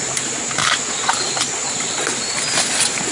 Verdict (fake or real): real